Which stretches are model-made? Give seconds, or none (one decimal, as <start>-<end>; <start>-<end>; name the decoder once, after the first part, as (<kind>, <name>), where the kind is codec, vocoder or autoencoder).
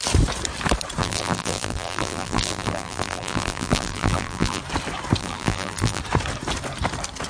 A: 1.0-4.6 (vocoder, BigVGAN v2); 5.2-6.0